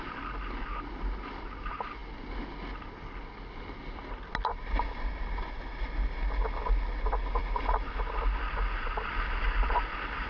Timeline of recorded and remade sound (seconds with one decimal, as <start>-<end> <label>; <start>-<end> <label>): 0.0-10.3 recorded